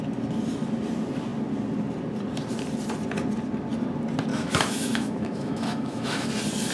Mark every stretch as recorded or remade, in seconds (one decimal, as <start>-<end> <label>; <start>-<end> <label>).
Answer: 0.0-4.3 recorded; 4.3-6.3 remade; 6.3-6.7 recorded

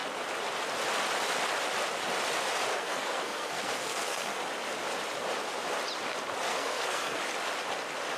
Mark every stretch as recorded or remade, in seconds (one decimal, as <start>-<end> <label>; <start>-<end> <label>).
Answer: 0.0-2.7 recorded; 2.7-4.4 remade; 4.4-6.5 recorded; 6.5-7.2 remade; 7.2-8.2 recorded

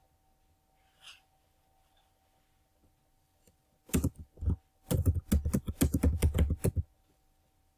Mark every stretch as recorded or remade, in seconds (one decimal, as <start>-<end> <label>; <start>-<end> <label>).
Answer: 0.0-7.8 recorded

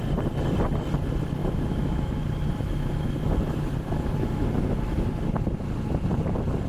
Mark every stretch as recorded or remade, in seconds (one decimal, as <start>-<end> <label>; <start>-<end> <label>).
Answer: 0.0-1.4 recorded; 1.4-5.4 remade; 5.4-6.7 recorded